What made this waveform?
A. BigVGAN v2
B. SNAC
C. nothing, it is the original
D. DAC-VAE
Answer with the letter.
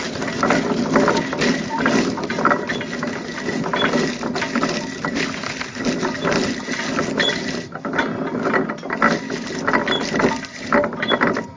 C